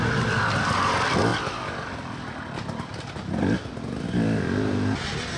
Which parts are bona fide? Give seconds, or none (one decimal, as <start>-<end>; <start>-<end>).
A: 0.0-5.4